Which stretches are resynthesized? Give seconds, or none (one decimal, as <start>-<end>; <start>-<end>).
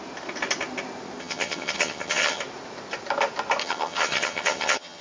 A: 1.2-2.4; 3.6-5.0